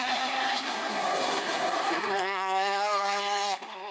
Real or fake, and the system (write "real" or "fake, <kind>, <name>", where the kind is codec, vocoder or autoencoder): fake, codec, SNAC